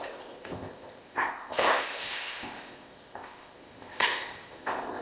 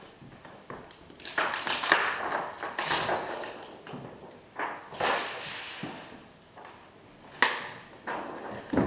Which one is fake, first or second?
first